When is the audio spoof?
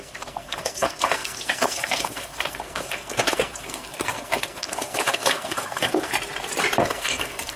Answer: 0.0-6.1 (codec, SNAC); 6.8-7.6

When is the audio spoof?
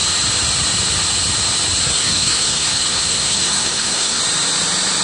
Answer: 1.8-4.2 (codec, SNAC)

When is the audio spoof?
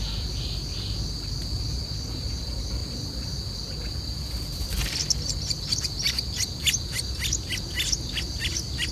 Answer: none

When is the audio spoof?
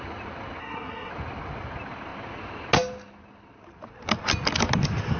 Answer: 0.6-1.1 (codec, SNAC)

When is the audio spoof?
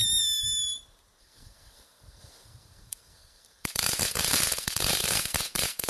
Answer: 1.2-5.9 (codec, SNAC)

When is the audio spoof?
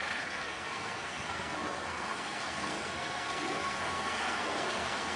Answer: 0.0-5.2 (codec, SNAC)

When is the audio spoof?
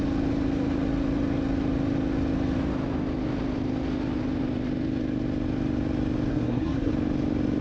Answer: 6.3-6.9 (codec, SNAC)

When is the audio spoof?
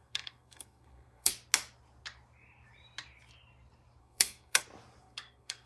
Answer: 0.0-1.3 (codec, SNAC); 4.0-4.6; 5.0-5.7